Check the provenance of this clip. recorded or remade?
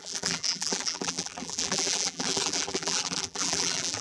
remade